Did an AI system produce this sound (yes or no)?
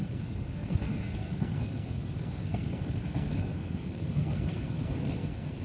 yes